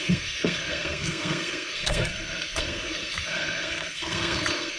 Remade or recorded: remade